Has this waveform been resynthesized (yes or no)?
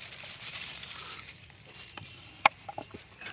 yes